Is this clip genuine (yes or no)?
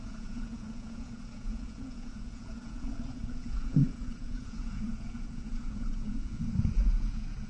no